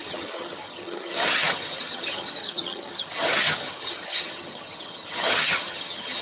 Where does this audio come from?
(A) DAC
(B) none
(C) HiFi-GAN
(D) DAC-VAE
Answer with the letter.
C